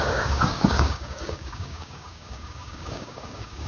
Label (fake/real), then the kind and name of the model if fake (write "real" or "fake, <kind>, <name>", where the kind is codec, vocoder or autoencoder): fake, codec, DAC